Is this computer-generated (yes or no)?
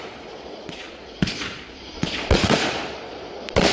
yes